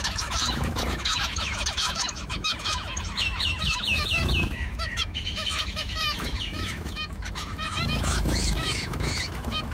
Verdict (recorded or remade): remade